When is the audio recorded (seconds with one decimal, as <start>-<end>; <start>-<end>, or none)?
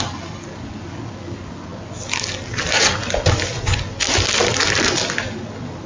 0.0-5.9